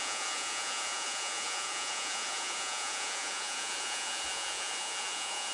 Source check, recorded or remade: remade